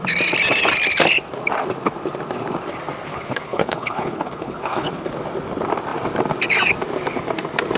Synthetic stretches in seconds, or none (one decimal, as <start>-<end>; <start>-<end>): 3.1-5.1